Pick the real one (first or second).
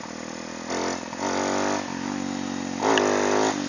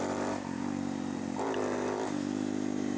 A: first